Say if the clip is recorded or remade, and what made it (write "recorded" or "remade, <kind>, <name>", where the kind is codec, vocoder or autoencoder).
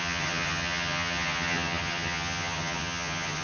remade, vocoder, HiFi-GAN